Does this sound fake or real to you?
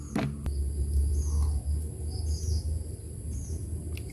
real